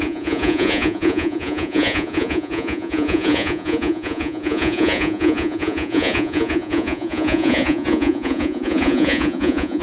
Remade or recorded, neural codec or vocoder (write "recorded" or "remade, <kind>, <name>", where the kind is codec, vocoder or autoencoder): remade, vocoder, Vocos